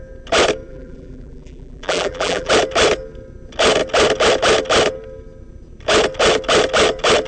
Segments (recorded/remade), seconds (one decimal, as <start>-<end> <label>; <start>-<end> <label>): 0.0-0.7 recorded; 0.7-2.5 remade; 2.5-7.3 recorded

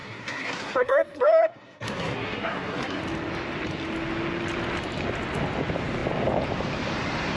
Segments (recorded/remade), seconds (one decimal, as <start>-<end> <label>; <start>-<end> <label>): 0.0-3.0 remade; 3.0-7.4 recorded

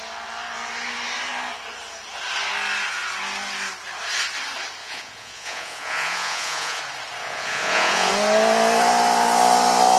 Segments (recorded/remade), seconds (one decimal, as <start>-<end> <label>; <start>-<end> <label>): 0.0-4.8 recorded; 4.8-6.8 remade; 6.8-7.2 recorded; 7.2-8.1 remade; 8.1-10.0 recorded

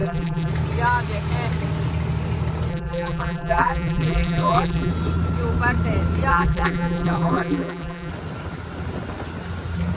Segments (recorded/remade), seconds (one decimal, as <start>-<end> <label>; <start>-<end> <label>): 0.0-0.5 remade; 0.5-2.7 recorded; 2.7-4.9 remade; 4.9-6.3 recorded; 6.3-8.1 remade; 8.1-10.0 recorded

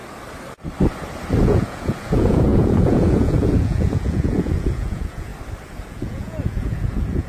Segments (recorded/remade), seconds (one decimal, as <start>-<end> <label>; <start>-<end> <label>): 0.0-1.4 recorded; 1.4-5.3 remade; 5.3-5.9 recorded; 5.9-7.3 remade

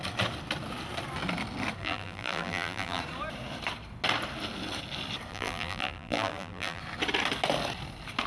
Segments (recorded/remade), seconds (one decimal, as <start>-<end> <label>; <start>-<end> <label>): 0.0-1.8 recorded; 1.8-3.0 remade; 3.0-5.3 recorded; 5.3-6.8 remade; 6.8-8.3 recorded